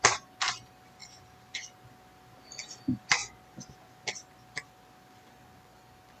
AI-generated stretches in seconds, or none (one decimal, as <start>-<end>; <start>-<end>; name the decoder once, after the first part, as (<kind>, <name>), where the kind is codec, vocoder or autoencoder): 1.0-1.7 (vocoder, BigVGAN v2)

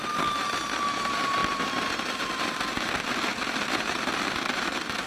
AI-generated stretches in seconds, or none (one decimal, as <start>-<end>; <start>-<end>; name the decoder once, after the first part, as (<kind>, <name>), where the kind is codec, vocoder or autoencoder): 0.0-5.1 (vocoder, BigVGAN v2)

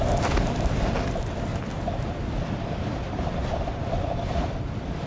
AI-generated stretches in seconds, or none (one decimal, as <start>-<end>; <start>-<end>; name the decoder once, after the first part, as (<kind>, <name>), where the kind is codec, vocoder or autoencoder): 1.5-4.6 (vocoder, BigVGAN v2)

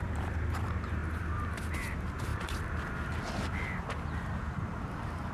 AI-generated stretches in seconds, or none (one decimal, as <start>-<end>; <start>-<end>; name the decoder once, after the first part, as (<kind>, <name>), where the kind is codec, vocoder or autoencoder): 0.0-1.0 (vocoder, BigVGAN v2); 1.9-2.3; 3.2-5.3

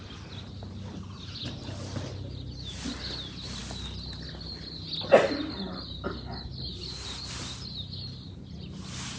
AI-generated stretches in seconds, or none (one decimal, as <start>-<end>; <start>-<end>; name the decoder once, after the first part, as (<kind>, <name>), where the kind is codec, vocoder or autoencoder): none

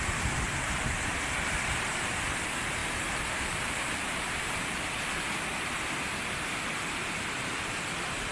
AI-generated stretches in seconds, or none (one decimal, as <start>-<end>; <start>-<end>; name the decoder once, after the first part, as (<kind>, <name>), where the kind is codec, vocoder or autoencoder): 0.0-8.3 (vocoder, BigVGAN v2)

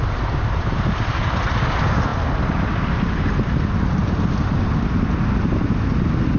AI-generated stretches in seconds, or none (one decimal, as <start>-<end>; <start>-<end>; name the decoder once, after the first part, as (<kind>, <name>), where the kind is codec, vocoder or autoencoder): 0.0-1.3 (vocoder, BigVGAN v2)

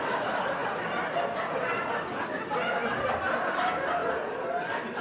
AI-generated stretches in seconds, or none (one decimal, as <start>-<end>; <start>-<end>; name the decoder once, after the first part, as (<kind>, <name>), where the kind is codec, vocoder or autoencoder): none